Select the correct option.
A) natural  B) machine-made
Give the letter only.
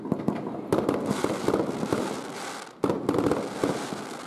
A